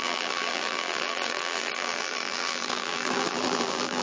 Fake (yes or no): yes